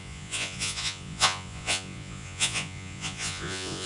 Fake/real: fake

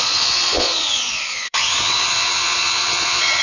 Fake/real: fake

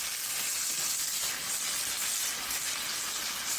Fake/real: real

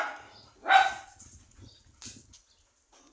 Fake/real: real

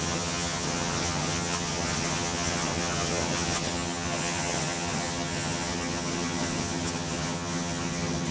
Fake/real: fake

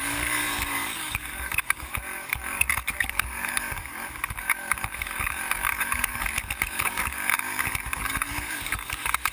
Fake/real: fake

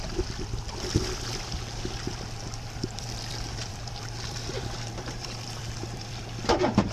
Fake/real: fake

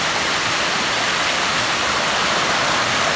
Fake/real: real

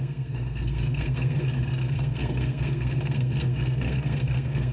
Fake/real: fake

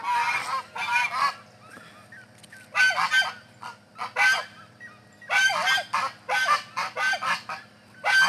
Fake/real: real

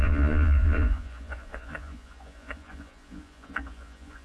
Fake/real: fake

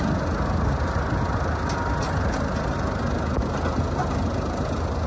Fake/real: real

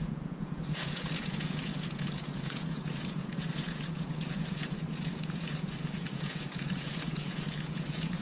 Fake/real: fake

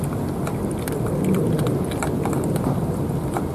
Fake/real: real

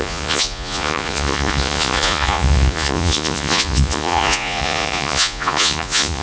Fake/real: fake